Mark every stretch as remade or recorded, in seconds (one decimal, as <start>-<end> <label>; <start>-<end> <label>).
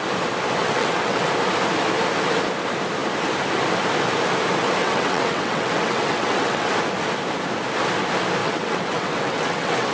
0.0-0.6 recorded; 0.6-1.3 remade; 1.3-4.8 recorded; 4.8-6.7 remade; 6.7-8.4 recorded; 8.4-9.9 remade